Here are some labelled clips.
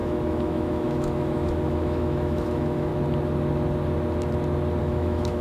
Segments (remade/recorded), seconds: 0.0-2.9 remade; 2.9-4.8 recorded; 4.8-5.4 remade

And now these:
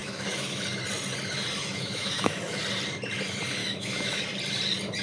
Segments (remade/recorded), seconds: 0.0-0.6 remade; 0.6-1.6 recorded; 1.6-2.6 remade; 2.6-3.6 recorded; 3.6-4.2 remade; 4.2-5.0 recorded

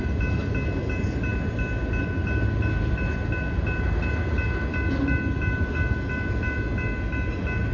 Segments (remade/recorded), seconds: 0.0-7.7 recorded

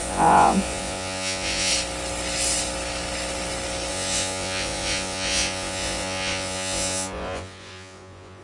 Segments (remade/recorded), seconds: 0.0-1.7 remade; 1.7-3.9 recorded; 3.9-8.4 remade

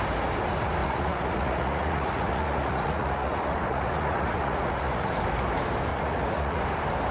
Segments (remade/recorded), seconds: 0.0-0.8 recorded; 0.8-5.1 remade; 5.1-5.9 recorded; 5.9-6.6 remade; 6.6-7.1 recorded

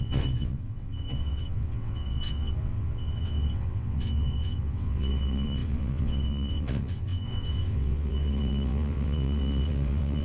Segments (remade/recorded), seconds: 0.0-10.2 remade